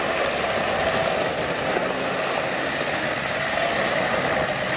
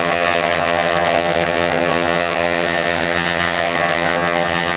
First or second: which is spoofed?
second